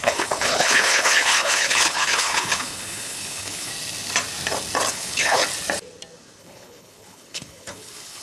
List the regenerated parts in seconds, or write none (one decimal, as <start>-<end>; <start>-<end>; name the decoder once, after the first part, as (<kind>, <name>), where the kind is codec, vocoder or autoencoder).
0.0-3.7 (codec, HILCodec); 4.9-5.4; 6.4-8.2